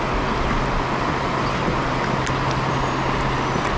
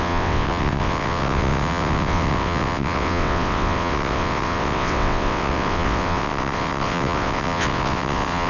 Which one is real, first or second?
first